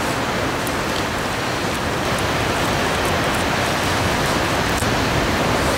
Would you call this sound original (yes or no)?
yes